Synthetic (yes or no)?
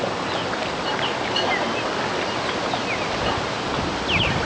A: no